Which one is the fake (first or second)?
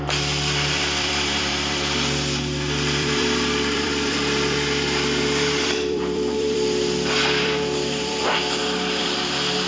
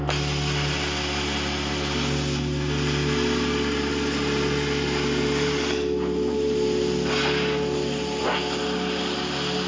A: first